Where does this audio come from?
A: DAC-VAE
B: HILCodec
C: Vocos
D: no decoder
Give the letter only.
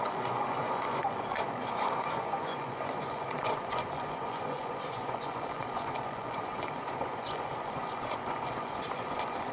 C